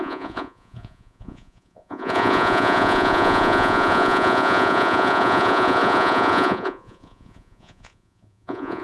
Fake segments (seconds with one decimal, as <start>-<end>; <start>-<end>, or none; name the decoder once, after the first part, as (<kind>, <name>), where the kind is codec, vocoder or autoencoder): 0.0-8.8 (vocoder, Vocos)

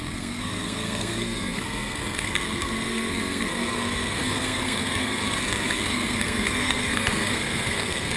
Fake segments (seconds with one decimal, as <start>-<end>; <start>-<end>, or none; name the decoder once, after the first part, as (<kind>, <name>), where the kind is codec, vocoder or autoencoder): 0.0-8.2 (codec, SNAC)

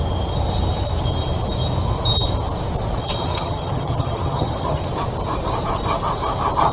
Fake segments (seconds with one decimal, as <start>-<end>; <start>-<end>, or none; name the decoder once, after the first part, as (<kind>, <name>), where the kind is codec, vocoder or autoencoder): 3.0-4.8 (vocoder, HiFi-GAN)

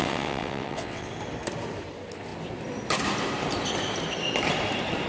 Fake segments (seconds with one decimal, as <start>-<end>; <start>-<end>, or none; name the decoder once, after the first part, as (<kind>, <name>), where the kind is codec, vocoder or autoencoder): 0.0-1.1 (vocoder, WaveNeXt)

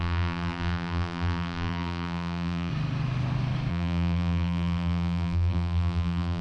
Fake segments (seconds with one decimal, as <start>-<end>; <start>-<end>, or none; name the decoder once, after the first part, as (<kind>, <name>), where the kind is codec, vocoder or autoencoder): 0.0-2.7 (vocoder, BigVGAN v2); 3.7-6.4

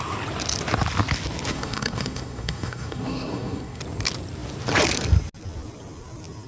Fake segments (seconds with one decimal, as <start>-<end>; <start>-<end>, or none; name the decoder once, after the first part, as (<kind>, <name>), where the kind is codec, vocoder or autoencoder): 1.5-3.8 (codec, SNAC)

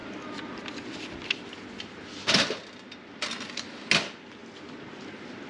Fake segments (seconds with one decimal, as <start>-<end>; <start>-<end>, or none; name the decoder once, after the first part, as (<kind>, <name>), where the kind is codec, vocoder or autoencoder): none

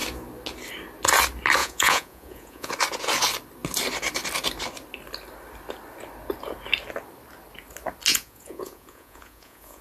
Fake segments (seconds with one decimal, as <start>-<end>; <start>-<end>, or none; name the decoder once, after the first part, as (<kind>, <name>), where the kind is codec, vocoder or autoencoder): 1.6-2.7 (vocoder, Vocos); 8.1-9.8